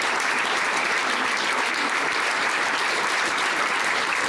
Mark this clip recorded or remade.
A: remade